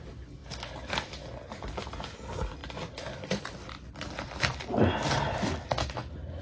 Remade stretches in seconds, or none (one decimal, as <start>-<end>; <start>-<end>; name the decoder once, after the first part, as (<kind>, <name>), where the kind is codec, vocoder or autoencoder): none